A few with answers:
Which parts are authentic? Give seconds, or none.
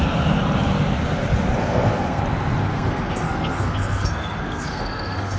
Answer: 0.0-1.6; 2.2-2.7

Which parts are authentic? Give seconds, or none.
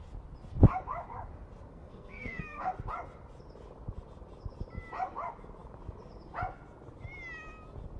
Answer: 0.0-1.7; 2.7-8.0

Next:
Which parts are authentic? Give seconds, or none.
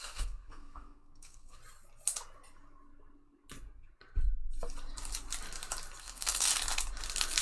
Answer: 1.6-6.0; 6.5-7.4